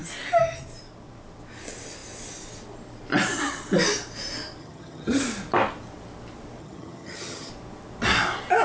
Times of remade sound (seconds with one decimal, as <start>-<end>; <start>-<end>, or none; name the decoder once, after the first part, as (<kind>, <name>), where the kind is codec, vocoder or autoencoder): 4.6-5.2 (vocoder, HiFi-GAN); 6.6-7.5